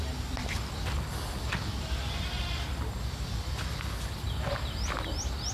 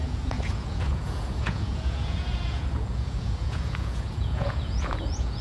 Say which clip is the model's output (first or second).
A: second